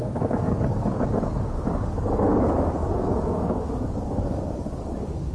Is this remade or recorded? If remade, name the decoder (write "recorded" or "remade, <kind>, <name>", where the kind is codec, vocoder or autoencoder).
remade, codec, DAC